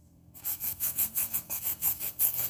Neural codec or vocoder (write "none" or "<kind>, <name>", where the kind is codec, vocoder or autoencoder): codec, SNAC